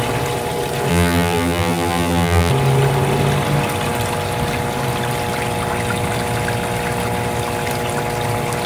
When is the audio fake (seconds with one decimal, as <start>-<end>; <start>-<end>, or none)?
0.9-2.5